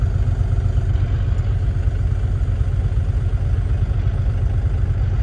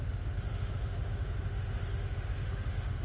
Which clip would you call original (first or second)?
first